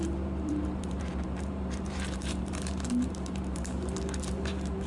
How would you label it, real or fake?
fake